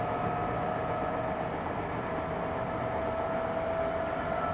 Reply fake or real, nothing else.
real